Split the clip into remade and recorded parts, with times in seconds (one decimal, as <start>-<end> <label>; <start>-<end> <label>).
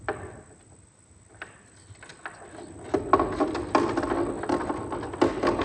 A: 0.0-5.6 recorded